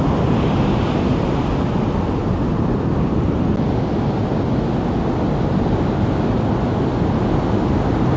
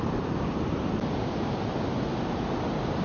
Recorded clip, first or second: first